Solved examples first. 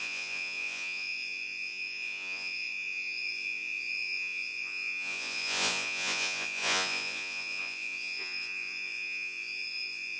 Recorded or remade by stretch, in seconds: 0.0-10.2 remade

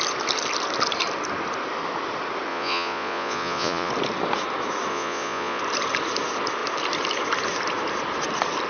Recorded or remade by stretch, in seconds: 0.0-2.5 recorded; 2.5-3.9 remade; 3.9-4.9 recorded; 4.9-5.6 remade; 5.6-8.7 recorded